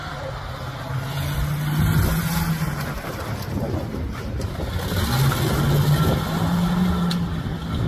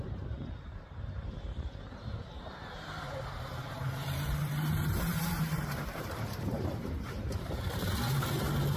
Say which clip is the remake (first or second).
second